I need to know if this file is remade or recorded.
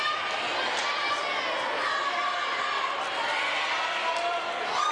recorded